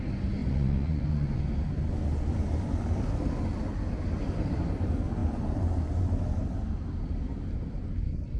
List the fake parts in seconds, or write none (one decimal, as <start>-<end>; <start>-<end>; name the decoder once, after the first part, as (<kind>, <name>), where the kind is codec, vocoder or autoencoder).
0.4-1.4 (vocoder, Vocos)